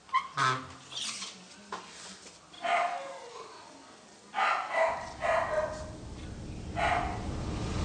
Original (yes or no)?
yes